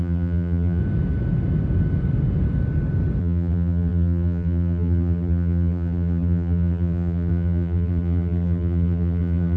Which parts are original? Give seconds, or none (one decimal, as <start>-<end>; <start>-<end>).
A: 0.8-3.2